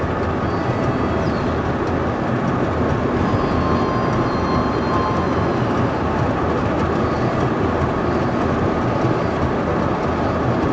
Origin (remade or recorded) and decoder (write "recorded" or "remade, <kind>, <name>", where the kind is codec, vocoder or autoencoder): recorded